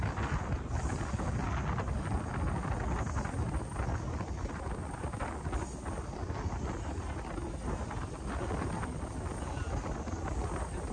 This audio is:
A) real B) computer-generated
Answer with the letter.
A